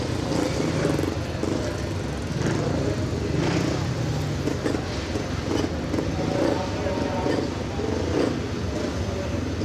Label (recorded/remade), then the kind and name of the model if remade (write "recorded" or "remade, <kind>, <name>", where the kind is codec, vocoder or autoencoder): recorded